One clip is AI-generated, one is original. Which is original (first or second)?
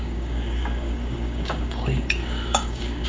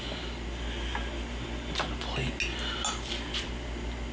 second